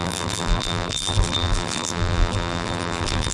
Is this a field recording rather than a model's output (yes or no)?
no